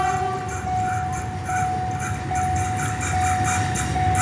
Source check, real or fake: real